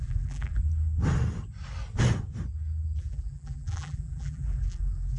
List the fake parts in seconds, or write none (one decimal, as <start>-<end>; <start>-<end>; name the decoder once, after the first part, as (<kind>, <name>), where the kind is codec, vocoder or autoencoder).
0.0-0.6 (vocoder, BigVGAN v2); 3.0-5.2